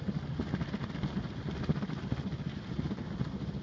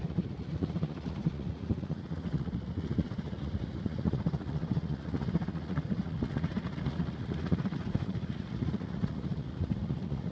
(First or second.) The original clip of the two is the first